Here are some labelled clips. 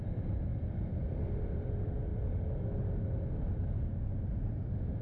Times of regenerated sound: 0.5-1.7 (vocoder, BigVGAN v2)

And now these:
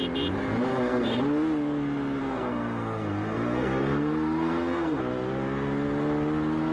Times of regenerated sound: 0.7-1.2 (codec, SNAC); 2.2-5.0

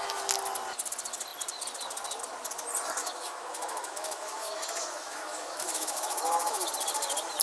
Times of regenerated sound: 3.0-6.7 (autoencoder, DAC-VAE)

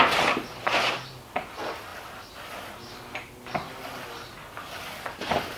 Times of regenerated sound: none

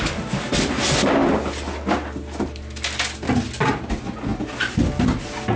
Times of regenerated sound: none

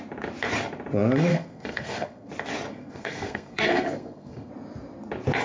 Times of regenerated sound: 1.3-2.3 (codec, SNAC); 2.7-4.5

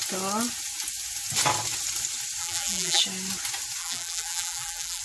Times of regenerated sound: 2.4-3.0 (vocoder, BigVGAN v2); 3.8-5.0